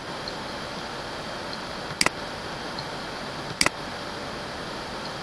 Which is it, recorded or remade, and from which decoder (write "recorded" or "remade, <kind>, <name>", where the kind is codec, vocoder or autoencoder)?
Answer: recorded